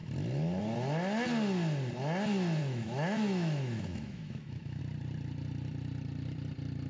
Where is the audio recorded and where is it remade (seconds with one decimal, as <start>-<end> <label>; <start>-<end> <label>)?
0.0-2.6 recorded; 2.6-4.8 remade; 4.8-6.9 recorded